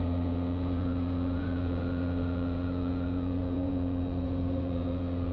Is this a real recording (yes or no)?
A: no